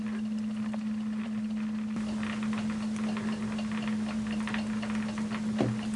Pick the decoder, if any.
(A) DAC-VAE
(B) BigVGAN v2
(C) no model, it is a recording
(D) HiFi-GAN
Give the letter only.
C